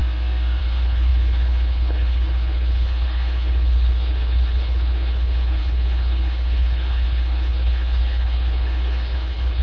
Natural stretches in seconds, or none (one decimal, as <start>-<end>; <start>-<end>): 0.0-0.6